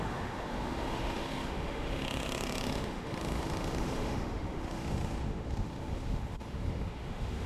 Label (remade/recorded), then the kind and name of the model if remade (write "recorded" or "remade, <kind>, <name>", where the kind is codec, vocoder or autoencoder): remade, autoencoder, DAC-VAE